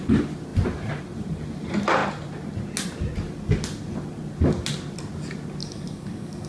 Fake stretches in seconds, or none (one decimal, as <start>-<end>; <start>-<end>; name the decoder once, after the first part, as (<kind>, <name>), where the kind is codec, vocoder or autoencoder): 5.6-6.5 (codec, DAC)